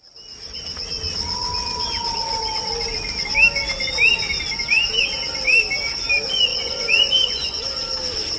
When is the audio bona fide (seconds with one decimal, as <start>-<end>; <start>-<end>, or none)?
0.0-6.5; 7.6-8.4